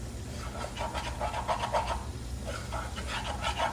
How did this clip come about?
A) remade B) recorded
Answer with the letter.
B